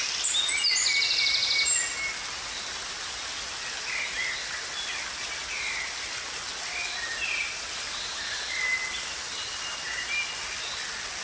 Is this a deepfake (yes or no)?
no